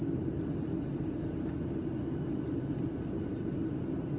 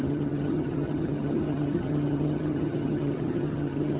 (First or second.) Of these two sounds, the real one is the first